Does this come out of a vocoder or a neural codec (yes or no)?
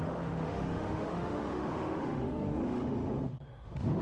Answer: yes